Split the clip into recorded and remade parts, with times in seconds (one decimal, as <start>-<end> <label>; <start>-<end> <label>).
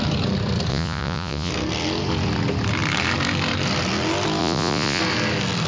0.0-0.7 recorded; 0.7-1.5 remade; 1.5-4.4 recorded; 4.4-5.0 remade; 5.0-5.7 recorded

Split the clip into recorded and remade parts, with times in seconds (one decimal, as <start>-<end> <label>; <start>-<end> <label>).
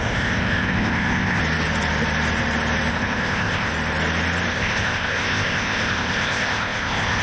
0.0-1.4 remade; 1.4-2.9 recorded; 2.9-3.7 remade; 3.7-4.5 recorded; 4.5-7.2 remade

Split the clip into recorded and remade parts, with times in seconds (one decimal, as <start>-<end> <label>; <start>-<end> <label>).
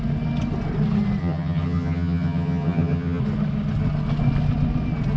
0.0-1.2 recorded; 1.2-3.2 remade; 3.2-5.2 recorded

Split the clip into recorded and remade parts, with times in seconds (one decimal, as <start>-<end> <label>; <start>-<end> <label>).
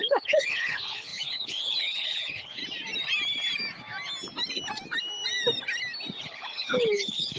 0.0-2.6 remade; 2.6-6.2 recorded; 6.2-7.4 remade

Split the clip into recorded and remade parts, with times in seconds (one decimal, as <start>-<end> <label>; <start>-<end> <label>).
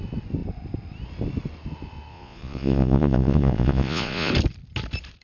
0.0-2.1 recorded; 2.1-4.3 remade; 4.3-5.2 recorded